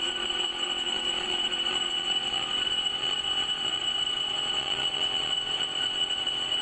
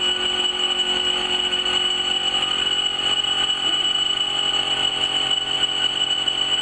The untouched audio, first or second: second